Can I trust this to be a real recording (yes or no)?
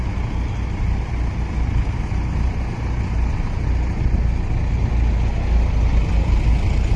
yes